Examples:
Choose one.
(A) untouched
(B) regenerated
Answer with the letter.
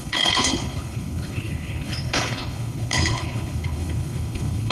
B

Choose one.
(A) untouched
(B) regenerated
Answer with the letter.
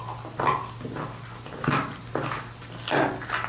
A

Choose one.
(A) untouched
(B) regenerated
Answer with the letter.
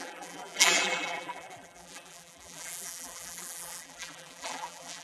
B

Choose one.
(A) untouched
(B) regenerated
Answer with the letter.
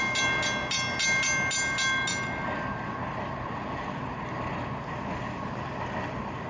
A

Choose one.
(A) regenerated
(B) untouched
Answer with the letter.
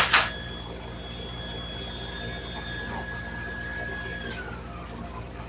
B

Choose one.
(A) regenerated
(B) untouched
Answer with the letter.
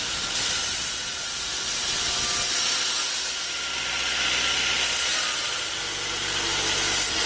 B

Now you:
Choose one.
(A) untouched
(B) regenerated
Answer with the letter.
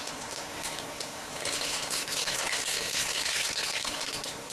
B